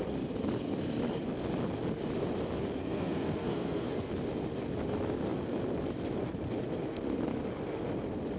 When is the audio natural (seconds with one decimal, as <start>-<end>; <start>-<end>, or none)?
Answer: 0.0-2.8; 4.1-8.4